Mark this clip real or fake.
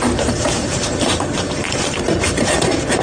fake